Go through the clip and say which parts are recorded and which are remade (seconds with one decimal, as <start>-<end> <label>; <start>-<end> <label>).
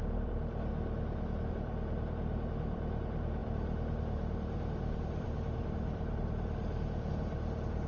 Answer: 0.0-0.7 remade; 0.7-1.5 recorded; 1.5-7.9 remade